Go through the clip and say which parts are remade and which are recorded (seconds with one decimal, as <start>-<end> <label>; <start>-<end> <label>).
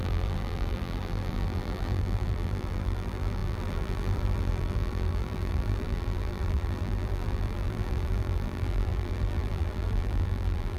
0.0-10.8 remade